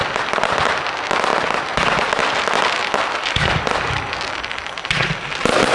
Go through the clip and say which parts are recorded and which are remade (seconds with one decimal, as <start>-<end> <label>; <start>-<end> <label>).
0.0-5.7 recorded